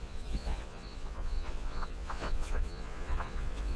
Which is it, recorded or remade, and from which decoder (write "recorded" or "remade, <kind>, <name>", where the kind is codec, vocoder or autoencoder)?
remade, vocoder, Vocos